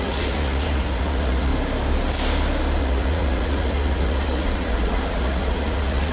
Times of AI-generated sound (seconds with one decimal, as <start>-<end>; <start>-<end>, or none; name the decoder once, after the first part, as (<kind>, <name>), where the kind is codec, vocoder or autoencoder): 0.0-1.5 (vocoder, Vocos); 2.8-6.1

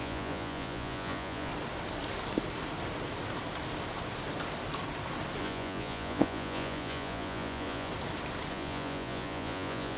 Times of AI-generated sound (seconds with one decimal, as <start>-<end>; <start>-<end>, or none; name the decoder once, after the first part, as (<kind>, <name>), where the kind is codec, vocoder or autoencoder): 0.0-1.5 (vocoder, Vocos); 5.4-7.9; 8.5-10.0